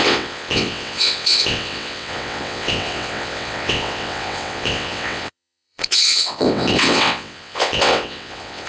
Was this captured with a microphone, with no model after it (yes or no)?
no